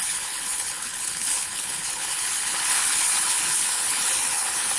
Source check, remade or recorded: remade